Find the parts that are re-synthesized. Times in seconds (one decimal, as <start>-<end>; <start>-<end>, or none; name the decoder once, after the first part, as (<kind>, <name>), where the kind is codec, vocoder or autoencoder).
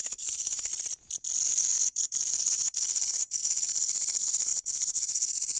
0.0-0.7 (codec, SNAC); 1.5-5.6